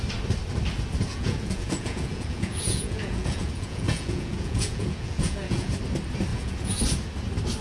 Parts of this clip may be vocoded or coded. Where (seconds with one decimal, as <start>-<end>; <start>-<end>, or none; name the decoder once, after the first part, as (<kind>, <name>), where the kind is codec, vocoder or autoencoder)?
1.1-5.7 (vocoder, Vocos); 6.3-6.8